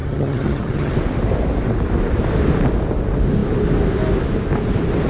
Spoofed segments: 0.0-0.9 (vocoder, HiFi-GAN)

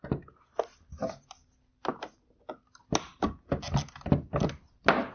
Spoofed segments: 1.9-2.5 (vocoder, BigVGAN v2); 3.1-3.6

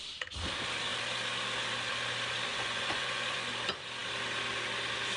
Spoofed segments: 2.5-3.5 (vocoder, Vocos)